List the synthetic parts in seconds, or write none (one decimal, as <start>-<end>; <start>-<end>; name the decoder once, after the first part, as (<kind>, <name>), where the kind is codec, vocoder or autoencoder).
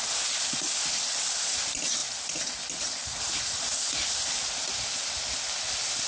none